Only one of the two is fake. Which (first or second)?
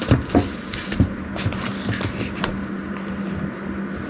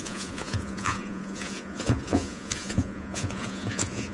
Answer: second